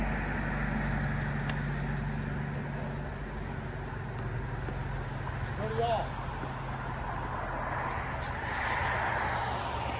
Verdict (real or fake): real